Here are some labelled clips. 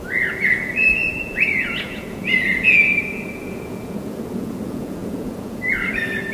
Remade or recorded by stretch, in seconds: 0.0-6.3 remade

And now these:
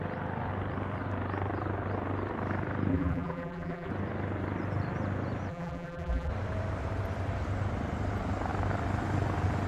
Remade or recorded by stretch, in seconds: 0.0-2.9 recorded; 2.9-3.9 remade; 3.9-5.5 recorded; 5.5-6.3 remade; 6.3-9.7 recorded

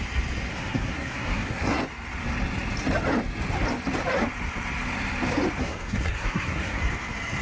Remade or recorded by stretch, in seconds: 0.0-0.5 recorded; 0.5-1.8 remade; 1.8-5.6 recorded; 5.6-6.8 remade; 6.8-7.4 recorded

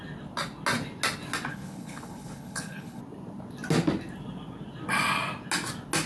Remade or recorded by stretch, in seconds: 0.0-1.5 recorded; 1.5-3.0 remade; 3.0-6.1 recorded